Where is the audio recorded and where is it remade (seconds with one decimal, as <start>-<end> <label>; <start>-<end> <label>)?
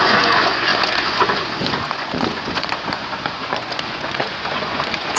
0.0-5.2 remade